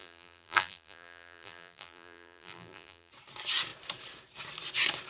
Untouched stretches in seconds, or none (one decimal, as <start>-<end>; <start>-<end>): 3.1-5.1